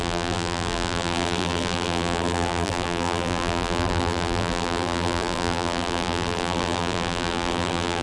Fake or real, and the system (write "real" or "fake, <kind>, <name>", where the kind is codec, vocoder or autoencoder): fake, vocoder, BigVGAN v2